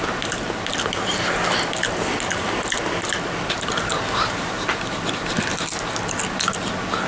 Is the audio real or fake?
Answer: real